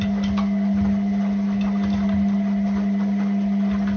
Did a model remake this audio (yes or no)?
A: no